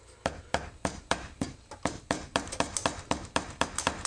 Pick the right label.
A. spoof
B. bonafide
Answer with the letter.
A